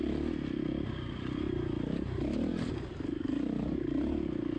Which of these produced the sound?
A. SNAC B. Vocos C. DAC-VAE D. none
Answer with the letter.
D